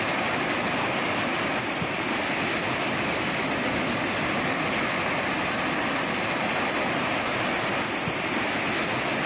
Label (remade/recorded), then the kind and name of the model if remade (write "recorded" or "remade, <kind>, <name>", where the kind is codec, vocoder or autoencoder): recorded